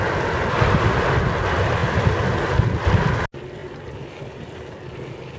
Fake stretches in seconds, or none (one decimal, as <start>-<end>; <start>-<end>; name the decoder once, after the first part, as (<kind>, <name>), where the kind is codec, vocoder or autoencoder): none